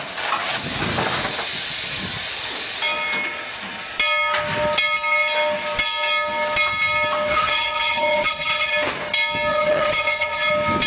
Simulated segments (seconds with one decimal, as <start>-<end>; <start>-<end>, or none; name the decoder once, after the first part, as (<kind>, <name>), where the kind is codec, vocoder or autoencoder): 7.3-8.7 (vocoder, HiFi-GAN); 9.5-10.5